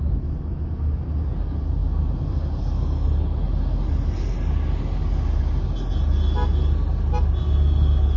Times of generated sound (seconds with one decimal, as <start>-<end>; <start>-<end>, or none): none